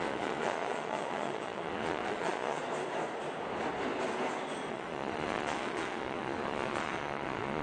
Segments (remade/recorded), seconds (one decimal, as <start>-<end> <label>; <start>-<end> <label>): 0.0-2.6 remade; 2.6-4.7 recorded; 4.7-7.6 remade